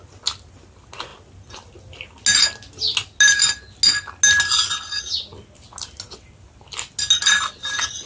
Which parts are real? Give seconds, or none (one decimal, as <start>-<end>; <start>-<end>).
0.0-8.1